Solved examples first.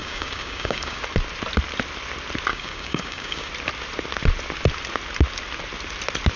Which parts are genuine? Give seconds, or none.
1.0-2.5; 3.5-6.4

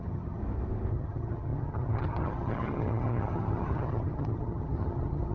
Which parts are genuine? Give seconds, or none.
0.4-0.9